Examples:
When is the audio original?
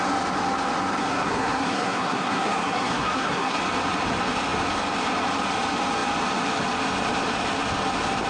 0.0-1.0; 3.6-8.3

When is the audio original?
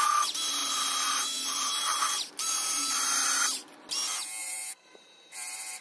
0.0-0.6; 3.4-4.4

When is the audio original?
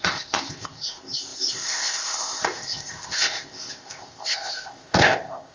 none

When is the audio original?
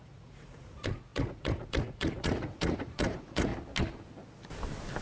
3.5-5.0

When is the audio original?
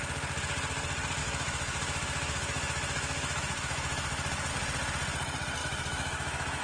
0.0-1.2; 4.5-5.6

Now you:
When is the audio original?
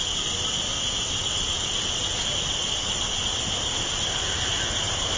0.0-5.2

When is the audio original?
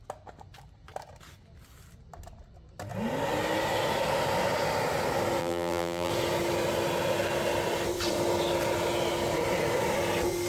0.0-5.4; 6.1-10.5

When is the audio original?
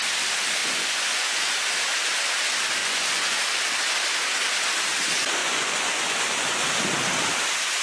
0.0-0.6; 1.6-2.8; 3.4-5.4; 6.6-7.8